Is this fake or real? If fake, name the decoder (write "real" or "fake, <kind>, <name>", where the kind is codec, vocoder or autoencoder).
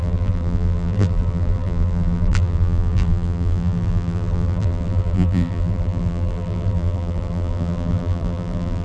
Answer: fake, vocoder, BigVGAN v2